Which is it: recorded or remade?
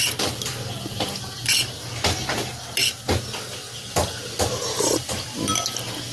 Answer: recorded